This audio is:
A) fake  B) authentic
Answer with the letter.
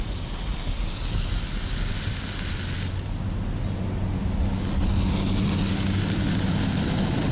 B